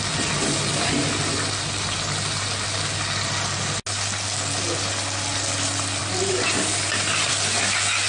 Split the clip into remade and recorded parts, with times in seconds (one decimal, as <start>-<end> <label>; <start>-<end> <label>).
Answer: 0.0-8.1 recorded